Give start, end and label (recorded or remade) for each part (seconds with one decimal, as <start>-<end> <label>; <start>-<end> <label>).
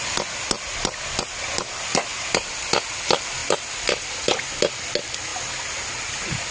0.0-6.5 recorded